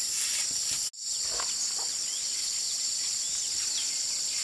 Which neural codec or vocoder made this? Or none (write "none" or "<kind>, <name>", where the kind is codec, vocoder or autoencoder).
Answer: none